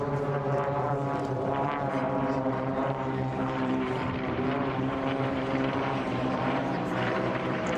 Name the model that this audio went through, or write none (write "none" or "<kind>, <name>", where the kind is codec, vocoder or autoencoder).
vocoder, BigVGAN v2